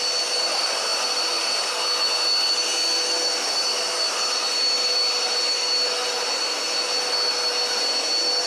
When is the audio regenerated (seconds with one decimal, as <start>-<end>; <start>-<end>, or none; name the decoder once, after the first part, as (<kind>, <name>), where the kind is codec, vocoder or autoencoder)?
none